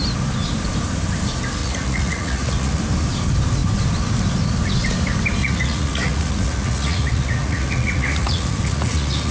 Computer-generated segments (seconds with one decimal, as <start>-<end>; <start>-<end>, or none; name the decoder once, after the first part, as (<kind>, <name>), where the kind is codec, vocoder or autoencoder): 1.6-2.8 (vocoder, Vocos); 5.4-9.3